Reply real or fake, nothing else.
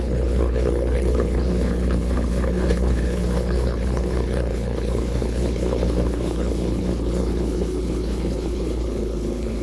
fake